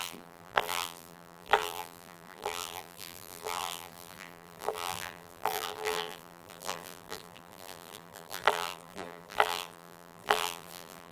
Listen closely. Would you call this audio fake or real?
fake